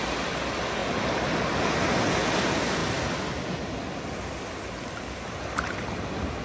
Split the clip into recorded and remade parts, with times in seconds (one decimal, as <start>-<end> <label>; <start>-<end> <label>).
0.0-6.4 recorded

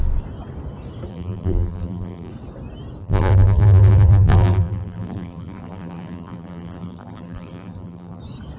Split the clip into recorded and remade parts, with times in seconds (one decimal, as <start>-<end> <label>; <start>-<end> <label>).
0.0-1.1 recorded; 1.1-2.3 remade; 2.3-3.0 recorded; 3.0-8.2 remade; 8.2-8.6 recorded

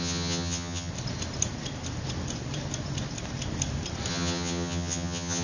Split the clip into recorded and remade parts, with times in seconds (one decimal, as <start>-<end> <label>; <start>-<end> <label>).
0.0-0.9 remade; 0.9-4.1 recorded; 4.1-5.4 remade

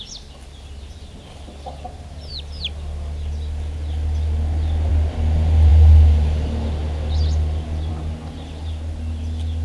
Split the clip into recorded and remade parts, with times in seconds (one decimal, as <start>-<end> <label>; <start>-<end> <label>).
0.0-9.6 recorded

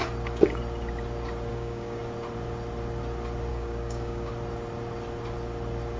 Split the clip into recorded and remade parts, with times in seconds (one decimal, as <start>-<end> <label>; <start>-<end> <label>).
0.0-1.5 recorded; 1.5-2.0 remade; 2.0-3.5 recorded; 3.5-4.3 remade; 4.3-6.0 recorded

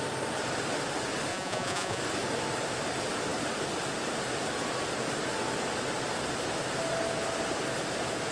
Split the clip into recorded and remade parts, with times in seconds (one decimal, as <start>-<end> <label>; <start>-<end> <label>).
0.0-1.3 recorded; 1.3-2.0 remade; 2.0-8.3 recorded